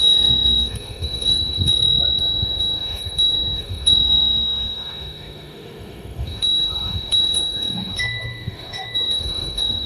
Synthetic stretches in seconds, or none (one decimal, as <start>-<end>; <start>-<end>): 0.0-1.7; 2.2-9.9